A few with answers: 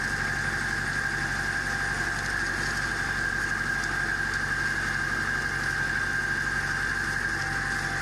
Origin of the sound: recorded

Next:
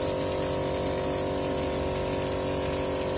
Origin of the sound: recorded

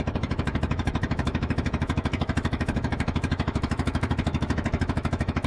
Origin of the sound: remade